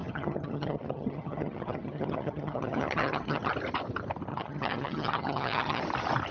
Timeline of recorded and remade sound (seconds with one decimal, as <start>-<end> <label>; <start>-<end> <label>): 0.0-3.5 remade; 3.5-4.3 recorded; 4.3-5.8 remade; 5.8-6.3 recorded